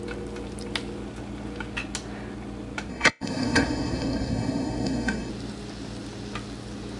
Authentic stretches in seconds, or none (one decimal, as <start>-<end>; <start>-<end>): 0.0-2.9; 5.3-7.0